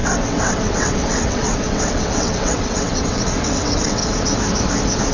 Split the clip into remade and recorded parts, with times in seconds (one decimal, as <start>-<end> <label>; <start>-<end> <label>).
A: 0.0-4.0 remade; 4.0-5.1 recorded